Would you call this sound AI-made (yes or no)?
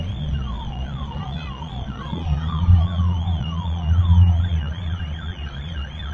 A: yes